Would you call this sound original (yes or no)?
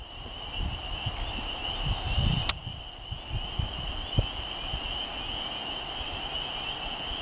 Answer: yes